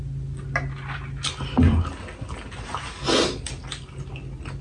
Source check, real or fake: real